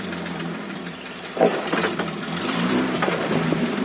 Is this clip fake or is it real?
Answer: fake